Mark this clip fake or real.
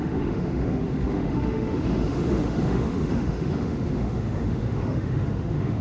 fake